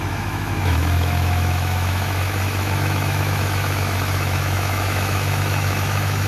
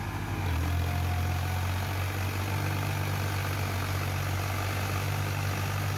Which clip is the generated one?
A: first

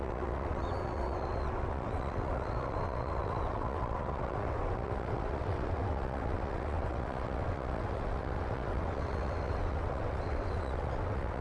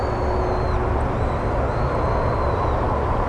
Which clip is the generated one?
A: first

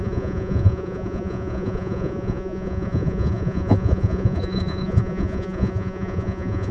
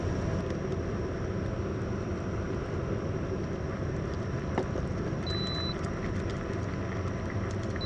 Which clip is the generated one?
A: first